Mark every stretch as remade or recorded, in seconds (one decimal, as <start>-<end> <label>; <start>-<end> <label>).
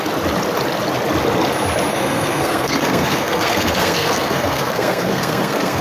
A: 0.0-1.9 recorded; 1.9-5.8 remade